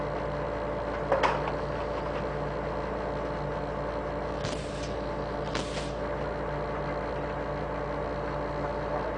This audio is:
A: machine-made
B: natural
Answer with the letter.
B